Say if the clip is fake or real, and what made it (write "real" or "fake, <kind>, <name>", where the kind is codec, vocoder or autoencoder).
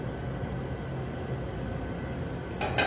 real